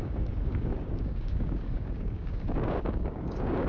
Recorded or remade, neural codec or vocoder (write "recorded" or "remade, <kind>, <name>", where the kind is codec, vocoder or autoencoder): remade, codec, DAC